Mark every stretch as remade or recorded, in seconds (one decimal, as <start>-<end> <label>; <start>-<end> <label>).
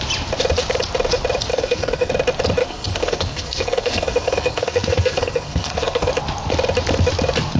0.0-1.5 recorded; 1.5-2.1 remade; 2.1-2.6 recorded; 2.6-6.1 remade; 6.1-7.6 recorded